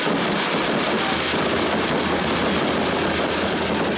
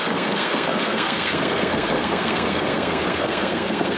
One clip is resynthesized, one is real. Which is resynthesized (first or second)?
second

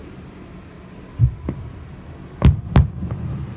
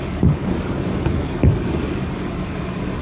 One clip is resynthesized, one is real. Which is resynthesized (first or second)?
second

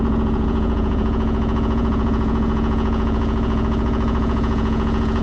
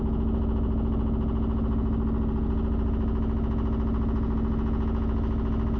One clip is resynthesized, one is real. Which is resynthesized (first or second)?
first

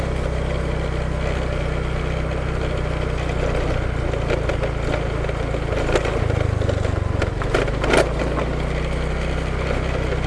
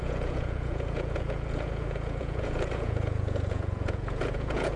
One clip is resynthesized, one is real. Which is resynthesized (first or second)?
second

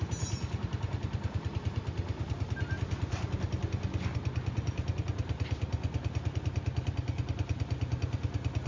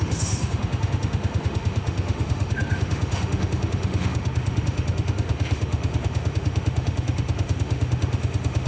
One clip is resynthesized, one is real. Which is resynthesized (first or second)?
second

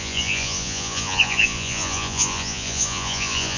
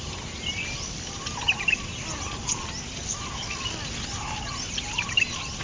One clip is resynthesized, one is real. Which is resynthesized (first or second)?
first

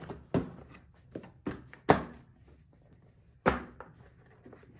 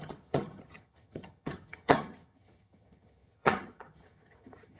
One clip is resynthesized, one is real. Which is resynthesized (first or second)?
second